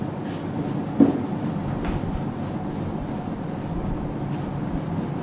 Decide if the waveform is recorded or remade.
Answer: recorded